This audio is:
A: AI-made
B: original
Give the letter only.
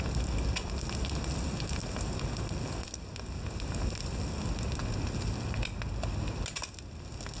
B